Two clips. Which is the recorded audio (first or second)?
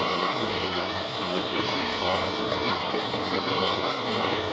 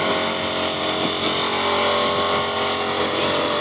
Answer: second